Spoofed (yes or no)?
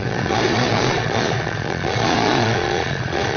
yes